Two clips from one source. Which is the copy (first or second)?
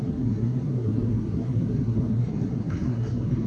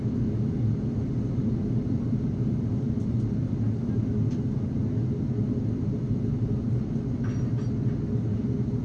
first